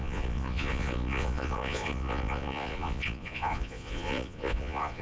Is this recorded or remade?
remade